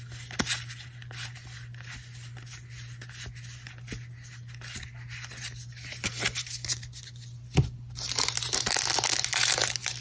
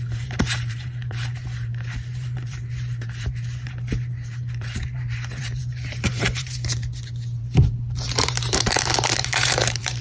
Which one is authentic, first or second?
first